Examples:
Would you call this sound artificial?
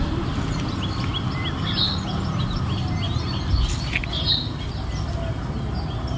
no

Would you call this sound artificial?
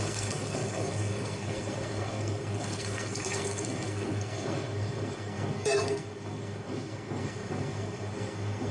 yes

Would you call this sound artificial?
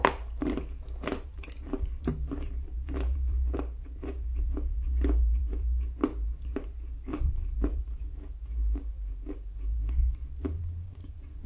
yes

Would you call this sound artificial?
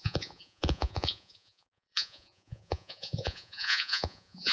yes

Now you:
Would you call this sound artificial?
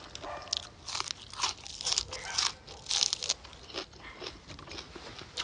no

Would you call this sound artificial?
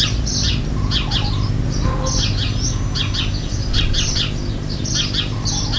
no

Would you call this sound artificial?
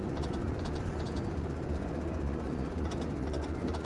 yes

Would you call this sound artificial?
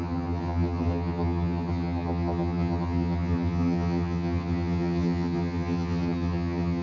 yes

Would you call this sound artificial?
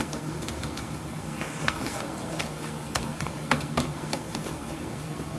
yes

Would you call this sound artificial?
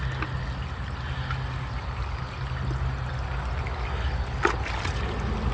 no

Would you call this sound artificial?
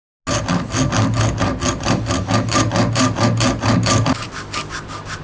no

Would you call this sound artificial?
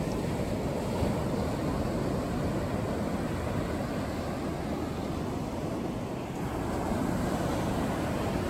no